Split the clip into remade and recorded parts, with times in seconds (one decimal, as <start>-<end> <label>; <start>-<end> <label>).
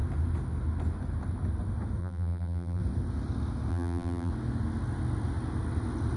0.0-2.0 recorded; 2.0-2.8 remade; 2.8-3.7 recorded; 3.7-4.3 remade; 4.3-6.2 recorded